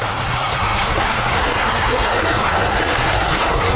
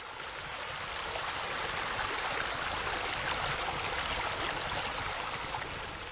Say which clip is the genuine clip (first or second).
second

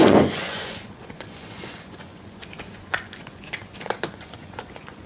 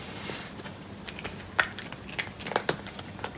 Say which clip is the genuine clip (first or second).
second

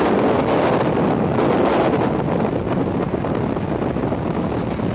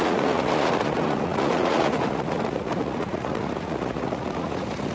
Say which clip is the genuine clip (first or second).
first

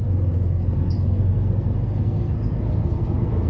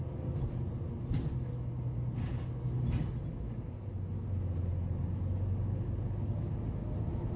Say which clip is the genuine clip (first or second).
second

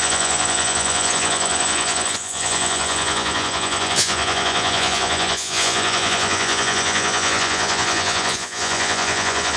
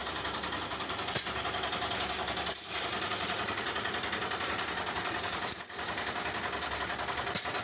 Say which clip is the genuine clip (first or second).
second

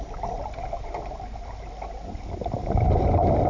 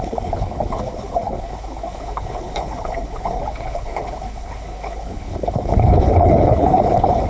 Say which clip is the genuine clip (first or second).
first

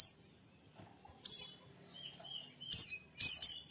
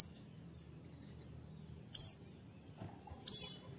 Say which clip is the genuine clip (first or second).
second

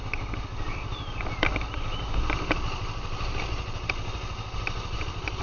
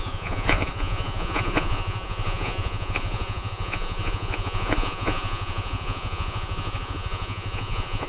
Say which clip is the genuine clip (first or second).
first